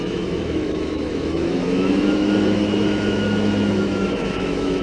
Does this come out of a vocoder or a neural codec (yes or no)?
yes